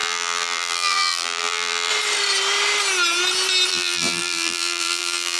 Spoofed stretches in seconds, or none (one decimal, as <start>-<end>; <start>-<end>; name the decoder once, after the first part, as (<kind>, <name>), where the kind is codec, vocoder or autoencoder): 0.0-1.9 (vocoder, BigVGAN v2); 3.7-5.4